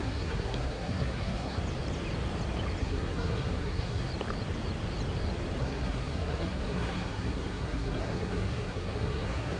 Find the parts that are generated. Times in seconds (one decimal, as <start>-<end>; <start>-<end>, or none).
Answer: 0.0-1.6; 2.8-4.1; 5.6-9.6